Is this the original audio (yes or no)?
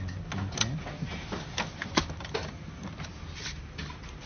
yes